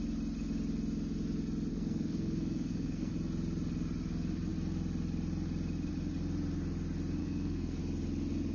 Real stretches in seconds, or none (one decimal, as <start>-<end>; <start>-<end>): 0.0-1.7; 3.1-7.2; 7.8-8.5